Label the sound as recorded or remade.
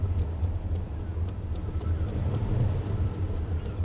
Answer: recorded